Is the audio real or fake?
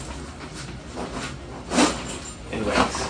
real